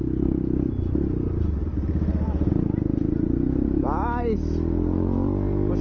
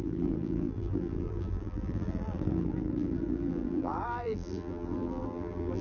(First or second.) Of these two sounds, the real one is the first